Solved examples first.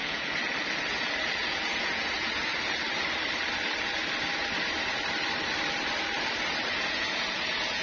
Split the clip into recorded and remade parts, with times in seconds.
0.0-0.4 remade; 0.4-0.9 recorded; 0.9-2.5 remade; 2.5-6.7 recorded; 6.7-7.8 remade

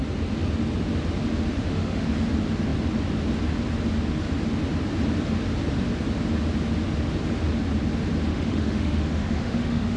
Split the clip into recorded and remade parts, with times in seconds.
0.0-1.6 recorded; 1.6-2.1 remade; 2.1-8.3 recorded; 8.3-10.0 remade

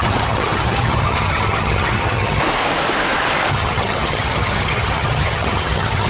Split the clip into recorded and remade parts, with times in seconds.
0.0-2.4 remade; 2.4-3.5 recorded; 3.5-6.1 remade